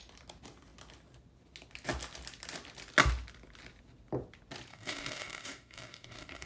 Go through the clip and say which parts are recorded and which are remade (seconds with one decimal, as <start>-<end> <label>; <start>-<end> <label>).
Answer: 0.0-4.7 recorded; 4.7-6.5 remade